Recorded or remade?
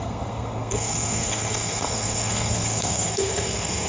remade